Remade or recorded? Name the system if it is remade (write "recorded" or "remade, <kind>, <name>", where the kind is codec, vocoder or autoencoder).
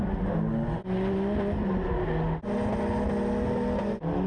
recorded